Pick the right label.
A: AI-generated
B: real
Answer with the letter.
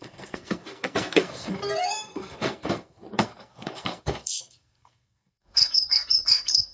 A